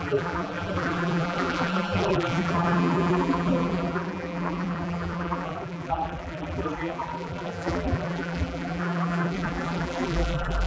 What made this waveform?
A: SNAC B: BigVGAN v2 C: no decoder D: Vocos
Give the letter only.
B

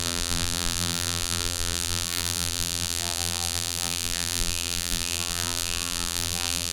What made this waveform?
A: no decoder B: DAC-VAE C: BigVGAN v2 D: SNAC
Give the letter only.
C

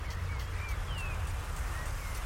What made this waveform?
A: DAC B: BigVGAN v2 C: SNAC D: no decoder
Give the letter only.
D